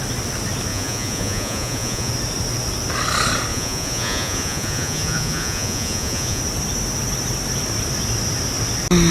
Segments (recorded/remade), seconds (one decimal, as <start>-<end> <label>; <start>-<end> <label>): 0.0-0.7 recorded; 0.7-2.1 remade; 2.1-3.5 recorded; 3.5-6.4 remade; 6.4-9.1 recorded